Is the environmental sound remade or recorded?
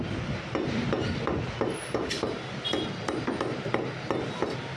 recorded